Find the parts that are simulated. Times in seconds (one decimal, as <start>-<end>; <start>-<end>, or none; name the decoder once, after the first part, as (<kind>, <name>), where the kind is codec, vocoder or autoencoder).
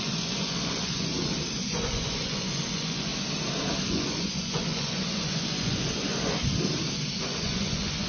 0.0-1.1 (vocoder, Vocos); 1.7-3.1; 3.9-6.4; 7.2-8.1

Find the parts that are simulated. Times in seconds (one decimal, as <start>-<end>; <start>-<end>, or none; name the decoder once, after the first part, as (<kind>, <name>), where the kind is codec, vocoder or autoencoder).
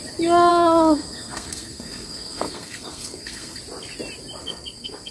0.5-3.6 (codec, SNAC); 4.4-5.1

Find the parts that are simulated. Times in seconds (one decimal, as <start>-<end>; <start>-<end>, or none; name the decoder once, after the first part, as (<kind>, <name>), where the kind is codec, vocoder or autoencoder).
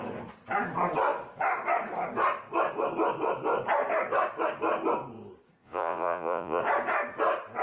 5.6-6.6 (vocoder, Vocos)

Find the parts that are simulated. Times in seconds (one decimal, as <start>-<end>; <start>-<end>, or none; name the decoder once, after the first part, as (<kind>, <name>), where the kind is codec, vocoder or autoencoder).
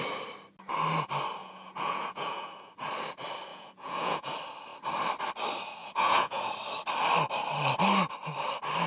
1.4-2.7 (vocoder, Vocos); 3.5-4.3; 5.8-6.5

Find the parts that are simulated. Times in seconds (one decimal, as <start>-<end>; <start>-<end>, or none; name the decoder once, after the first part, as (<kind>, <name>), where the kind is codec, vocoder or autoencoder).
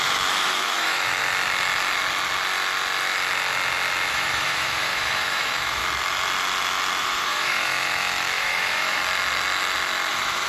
0.0-1.2 (autoencoder, DAC-VAE); 4.1-5.8; 7.0-9.0; 10.1-10.5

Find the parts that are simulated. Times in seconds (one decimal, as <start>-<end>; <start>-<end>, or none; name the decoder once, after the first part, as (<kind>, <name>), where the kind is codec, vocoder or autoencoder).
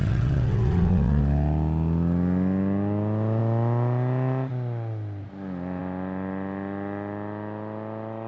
0.0-1.2 (vocoder, WaveNeXt)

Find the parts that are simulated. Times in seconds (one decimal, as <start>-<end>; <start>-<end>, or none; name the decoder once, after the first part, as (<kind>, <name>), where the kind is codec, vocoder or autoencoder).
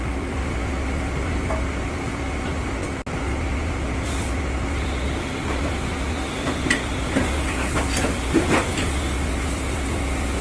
none